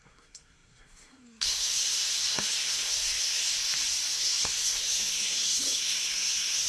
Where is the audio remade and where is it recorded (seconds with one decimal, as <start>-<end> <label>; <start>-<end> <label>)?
0.0-3.4 remade; 3.4-4.1 recorded; 4.1-6.7 remade